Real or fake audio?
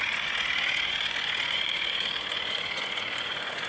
fake